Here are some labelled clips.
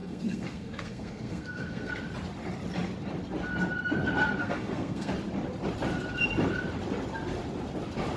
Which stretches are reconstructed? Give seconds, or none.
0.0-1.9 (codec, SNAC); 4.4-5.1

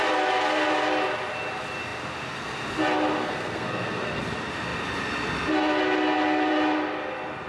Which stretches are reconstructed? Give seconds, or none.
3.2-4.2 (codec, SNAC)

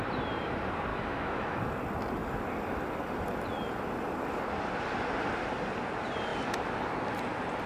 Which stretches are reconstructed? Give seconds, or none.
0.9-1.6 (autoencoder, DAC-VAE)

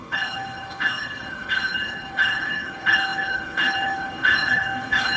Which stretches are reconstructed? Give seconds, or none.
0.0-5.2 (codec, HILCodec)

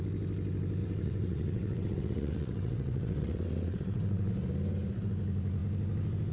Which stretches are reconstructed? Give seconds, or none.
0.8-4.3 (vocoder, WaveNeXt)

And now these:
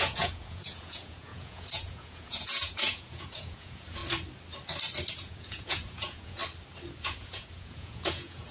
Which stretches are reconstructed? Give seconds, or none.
0.0-4.0 (vocoder, Vocos); 5.1-6.4; 7.0-8.5